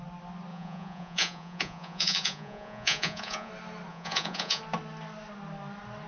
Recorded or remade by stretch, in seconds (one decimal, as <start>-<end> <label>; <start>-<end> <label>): 0.0-0.5 recorded; 0.5-3.5 remade; 3.5-3.9 recorded; 3.9-4.6 remade; 4.6-6.1 recorded